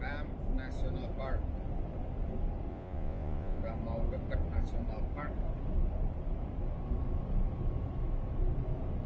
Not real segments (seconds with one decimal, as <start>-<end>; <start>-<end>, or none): 2.7-3.6

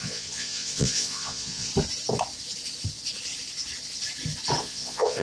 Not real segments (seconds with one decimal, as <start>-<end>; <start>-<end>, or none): 0.0-1.7; 4.6-5.2

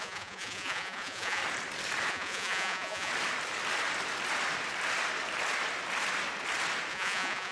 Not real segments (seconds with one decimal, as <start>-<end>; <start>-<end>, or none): 0.0-1.4; 2.1-3.1; 6.9-7.5

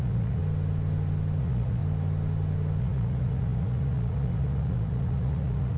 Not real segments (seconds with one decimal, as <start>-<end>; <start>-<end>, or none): 0.0-0.4; 1.4-1.8; 2.8-5.8

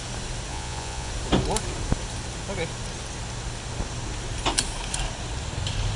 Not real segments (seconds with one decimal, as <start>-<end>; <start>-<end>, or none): 0.5-1.1